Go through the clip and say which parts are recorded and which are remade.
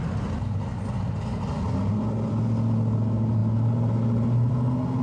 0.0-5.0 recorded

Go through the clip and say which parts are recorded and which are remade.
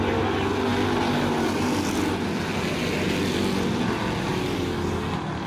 0.0-5.5 recorded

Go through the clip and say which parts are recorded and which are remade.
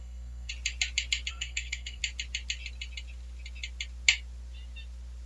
0.0-0.5 remade; 0.5-1.3 recorded; 1.3-2.0 remade; 2.0-5.3 recorded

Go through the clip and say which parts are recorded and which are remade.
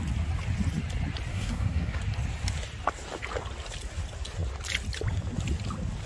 0.0-1.3 recorded; 1.3-2.0 remade; 2.0-6.1 recorded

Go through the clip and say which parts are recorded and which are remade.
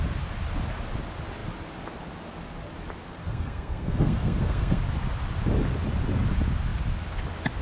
0.0-3.2 recorded; 3.2-4.8 remade; 4.8-7.6 recorded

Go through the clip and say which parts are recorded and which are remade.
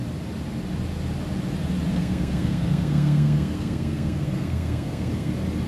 0.0-1.9 recorded; 1.9-5.3 remade; 5.3-5.7 recorded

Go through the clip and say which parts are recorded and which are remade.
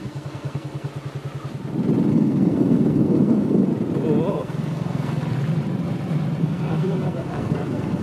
0.0-0.9 remade; 0.9-2.1 recorded; 2.1-3.7 remade; 3.7-4.3 recorded; 4.3-5.2 remade; 5.2-6.4 recorded; 6.4-8.0 remade